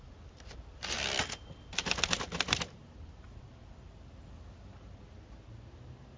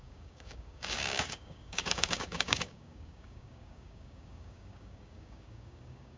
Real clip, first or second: first